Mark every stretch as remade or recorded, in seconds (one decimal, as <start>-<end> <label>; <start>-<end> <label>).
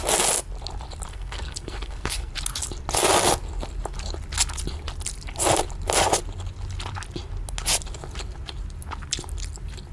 0.0-1.1 recorded; 1.1-2.3 remade; 2.3-9.9 recorded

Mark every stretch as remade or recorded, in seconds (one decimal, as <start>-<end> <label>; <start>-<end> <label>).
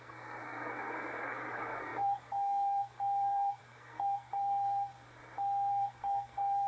0.0-4.9 remade; 4.9-5.7 recorded; 5.7-6.7 remade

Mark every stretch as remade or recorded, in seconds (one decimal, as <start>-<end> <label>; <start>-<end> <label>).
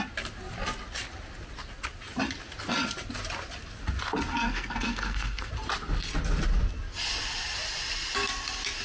0.0-4.3 recorded; 4.3-5.5 remade; 5.5-8.8 recorded